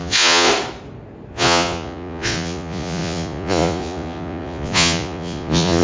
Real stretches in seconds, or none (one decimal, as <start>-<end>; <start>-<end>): 0.5-1.3